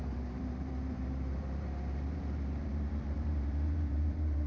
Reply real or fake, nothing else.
fake